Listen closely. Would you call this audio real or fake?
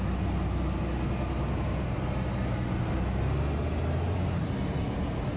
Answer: real